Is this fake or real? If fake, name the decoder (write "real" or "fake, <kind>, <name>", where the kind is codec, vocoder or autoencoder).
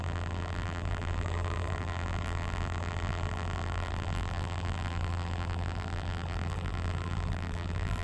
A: fake, vocoder, BigVGAN v2